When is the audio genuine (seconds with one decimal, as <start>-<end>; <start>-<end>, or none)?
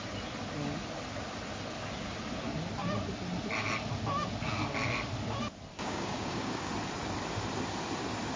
0.0-5.7; 6.7-8.4